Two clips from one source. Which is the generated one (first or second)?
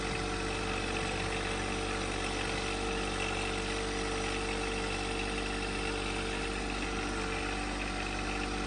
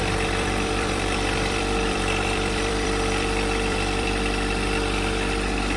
second